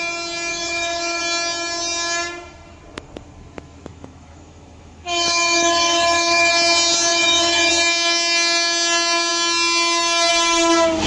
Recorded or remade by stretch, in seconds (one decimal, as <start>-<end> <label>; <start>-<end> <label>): 0.0-0.5 recorded; 0.5-1.2 remade; 1.2-3.9 recorded; 3.9-6.5 remade; 6.5-7.1 recorded; 7.1-7.7 remade; 7.7-11.1 recorded